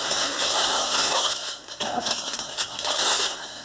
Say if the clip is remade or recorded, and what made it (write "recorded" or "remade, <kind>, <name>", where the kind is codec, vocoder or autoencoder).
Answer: remade, codec, SNAC